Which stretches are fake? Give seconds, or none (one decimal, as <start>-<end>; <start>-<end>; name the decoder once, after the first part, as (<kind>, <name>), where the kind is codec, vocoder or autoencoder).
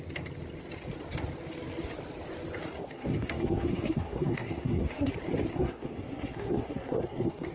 2.8-5.1 (codec, SNAC); 5.5-7.5